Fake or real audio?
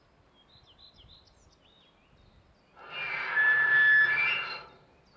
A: real